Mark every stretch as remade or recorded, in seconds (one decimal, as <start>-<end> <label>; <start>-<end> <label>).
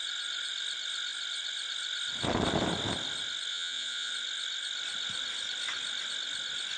0.0-3.5 recorded; 3.5-4.1 remade; 4.1-6.8 recorded